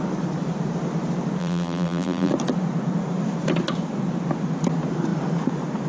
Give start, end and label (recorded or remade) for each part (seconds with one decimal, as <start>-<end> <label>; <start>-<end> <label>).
0.0-1.4 recorded; 1.4-2.3 remade; 2.3-5.9 recorded